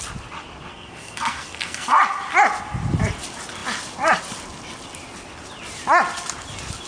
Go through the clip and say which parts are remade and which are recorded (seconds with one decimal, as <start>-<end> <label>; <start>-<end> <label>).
0.0-0.7 recorded; 0.7-2.0 remade; 2.0-6.9 recorded